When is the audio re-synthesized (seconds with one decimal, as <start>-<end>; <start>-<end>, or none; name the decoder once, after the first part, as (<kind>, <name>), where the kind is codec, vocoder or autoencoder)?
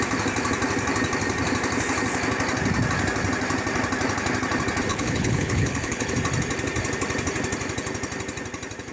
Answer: 4.9-6.1 (codec, HILCodec)